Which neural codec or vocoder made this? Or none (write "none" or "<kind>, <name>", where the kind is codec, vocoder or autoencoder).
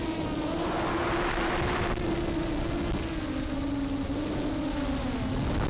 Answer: none